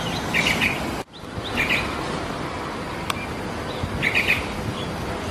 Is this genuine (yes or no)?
yes